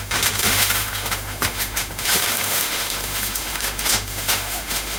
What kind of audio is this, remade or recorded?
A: remade